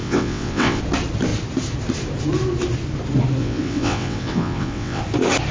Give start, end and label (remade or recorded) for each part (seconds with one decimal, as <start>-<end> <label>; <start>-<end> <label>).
0.0-0.8 remade; 0.8-3.4 recorded; 3.4-5.0 remade; 5.0-5.5 recorded